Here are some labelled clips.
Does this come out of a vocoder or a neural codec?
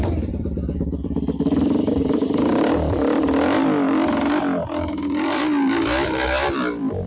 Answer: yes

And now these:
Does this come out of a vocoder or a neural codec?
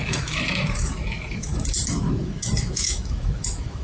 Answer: yes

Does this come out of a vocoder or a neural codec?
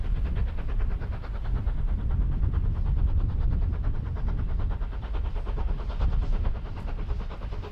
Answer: no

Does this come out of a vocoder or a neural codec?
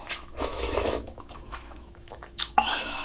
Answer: yes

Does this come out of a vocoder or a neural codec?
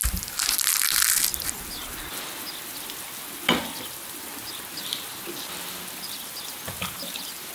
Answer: no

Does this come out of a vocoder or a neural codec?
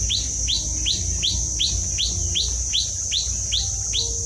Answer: no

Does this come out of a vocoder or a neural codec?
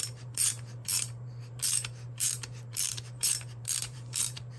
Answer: yes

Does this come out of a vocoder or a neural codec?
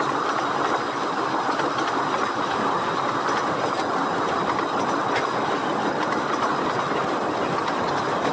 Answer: no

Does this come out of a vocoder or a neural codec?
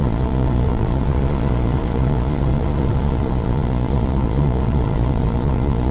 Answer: yes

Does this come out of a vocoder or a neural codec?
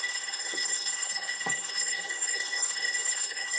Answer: yes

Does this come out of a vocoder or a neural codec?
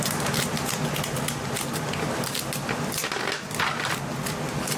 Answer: no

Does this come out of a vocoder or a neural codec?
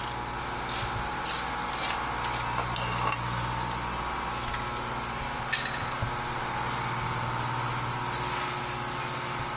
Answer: no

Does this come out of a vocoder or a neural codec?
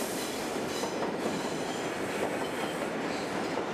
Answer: no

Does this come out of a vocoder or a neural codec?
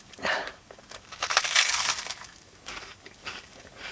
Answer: yes